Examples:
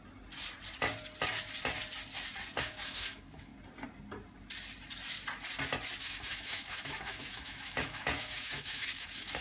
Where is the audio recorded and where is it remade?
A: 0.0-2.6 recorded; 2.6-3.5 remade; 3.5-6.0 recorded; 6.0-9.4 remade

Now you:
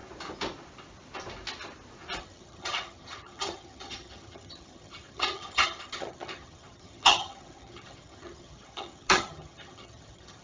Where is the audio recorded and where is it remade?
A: 0.0-2.2 recorded; 2.2-10.4 remade